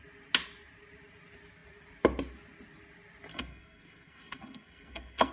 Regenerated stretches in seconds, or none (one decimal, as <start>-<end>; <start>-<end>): 3.3-5.3